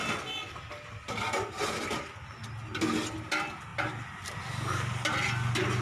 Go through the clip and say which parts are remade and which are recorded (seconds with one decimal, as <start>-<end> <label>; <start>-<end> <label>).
0.0-5.8 recorded